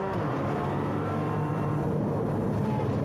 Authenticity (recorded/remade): remade